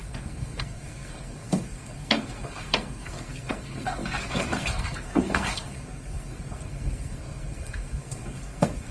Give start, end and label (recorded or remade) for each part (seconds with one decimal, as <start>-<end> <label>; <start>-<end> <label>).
0.0-8.9 remade